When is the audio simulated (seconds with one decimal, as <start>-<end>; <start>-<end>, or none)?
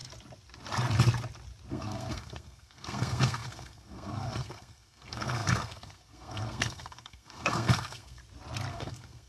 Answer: 1.7-8.2; 8.7-9.3